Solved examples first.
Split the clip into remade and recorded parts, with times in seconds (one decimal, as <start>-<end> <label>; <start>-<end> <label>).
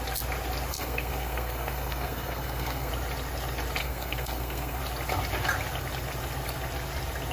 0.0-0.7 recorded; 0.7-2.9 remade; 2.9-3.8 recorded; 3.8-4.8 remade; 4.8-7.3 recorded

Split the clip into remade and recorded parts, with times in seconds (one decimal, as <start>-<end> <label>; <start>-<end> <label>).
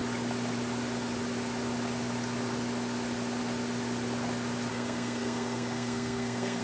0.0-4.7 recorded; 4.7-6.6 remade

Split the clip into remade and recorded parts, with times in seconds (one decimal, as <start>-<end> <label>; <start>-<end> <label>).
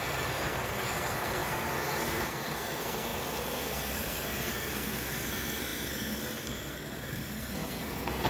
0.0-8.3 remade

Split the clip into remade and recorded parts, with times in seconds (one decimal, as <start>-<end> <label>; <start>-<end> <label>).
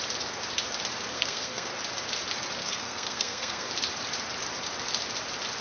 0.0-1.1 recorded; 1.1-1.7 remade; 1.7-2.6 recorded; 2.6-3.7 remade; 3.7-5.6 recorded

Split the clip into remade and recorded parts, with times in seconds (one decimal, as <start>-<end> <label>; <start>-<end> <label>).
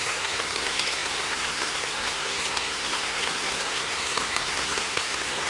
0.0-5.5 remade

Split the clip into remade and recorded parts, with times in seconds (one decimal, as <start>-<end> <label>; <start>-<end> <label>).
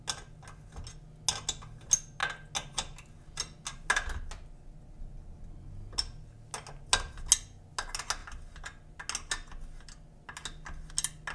0.0-11.3 recorded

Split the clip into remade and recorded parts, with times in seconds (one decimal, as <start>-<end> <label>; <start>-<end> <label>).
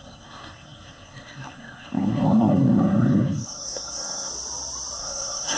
0.0-4.3 remade; 4.3-5.0 recorded; 5.0-5.6 remade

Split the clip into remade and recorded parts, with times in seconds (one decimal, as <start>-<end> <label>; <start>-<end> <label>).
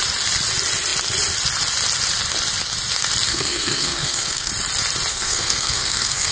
0.0-3.3 recorded; 3.3-4.5 remade; 4.5-5.1 recorded; 5.1-6.3 remade